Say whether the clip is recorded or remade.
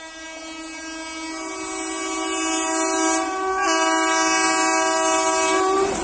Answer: recorded